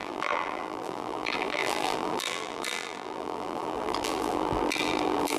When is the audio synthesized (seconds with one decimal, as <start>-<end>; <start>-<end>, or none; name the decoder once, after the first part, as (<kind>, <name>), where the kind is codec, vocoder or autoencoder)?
0.0-5.4 (vocoder, BigVGAN v2)